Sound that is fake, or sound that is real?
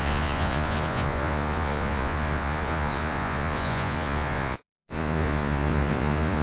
fake